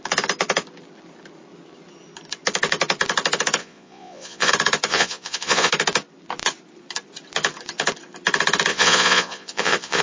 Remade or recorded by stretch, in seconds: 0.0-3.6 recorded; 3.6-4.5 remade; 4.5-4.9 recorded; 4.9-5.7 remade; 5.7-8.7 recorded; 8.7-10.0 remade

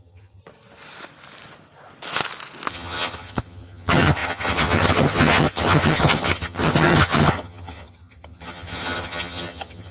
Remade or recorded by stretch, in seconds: 0.0-0.4 remade; 0.4-2.7 recorded; 2.7-9.9 remade

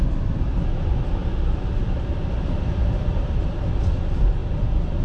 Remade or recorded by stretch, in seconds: 0.0-1.2 recorded; 1.2-3.7 remade; 3.7-4.4 recorded; 4.4-5.0 remade

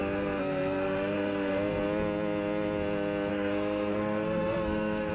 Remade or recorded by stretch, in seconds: 0.0-1.8 remade; 1.8-3.3 recorded; 3.3-5.1 remade

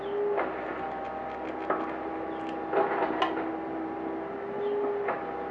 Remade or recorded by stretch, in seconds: 0.0-5.5 recorded

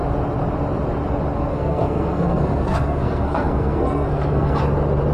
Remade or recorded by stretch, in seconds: 0.0-1.5 recorded; 1.5-4.6 remade; 4.6-5.1 recorded